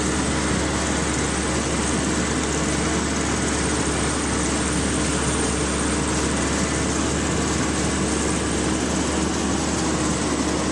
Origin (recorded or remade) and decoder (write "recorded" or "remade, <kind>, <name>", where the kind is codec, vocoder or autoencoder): recorded